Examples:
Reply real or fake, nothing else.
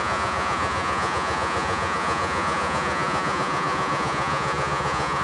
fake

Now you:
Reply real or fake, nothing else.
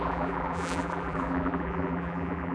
fake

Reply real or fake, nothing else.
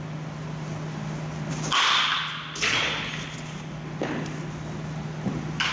real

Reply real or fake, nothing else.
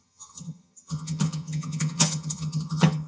fake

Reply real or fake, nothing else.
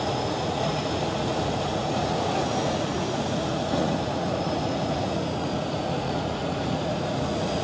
fake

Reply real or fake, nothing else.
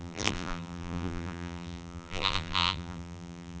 fake